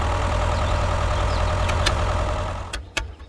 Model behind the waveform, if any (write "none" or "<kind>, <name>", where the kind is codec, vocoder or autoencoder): vocoder, Vocos